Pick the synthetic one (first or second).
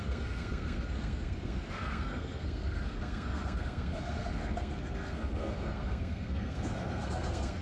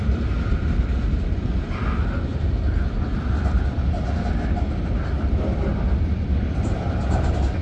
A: first